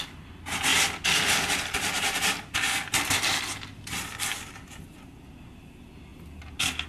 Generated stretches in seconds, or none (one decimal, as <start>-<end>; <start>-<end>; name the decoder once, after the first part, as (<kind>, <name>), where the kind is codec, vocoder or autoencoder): 0.7-4.8 (vocoder, BigVGAN v2)